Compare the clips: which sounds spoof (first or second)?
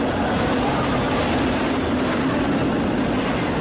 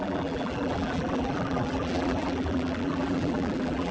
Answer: second